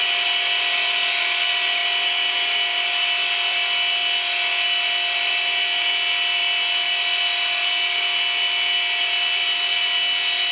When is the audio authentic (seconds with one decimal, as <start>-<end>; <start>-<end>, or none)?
0.0-10.5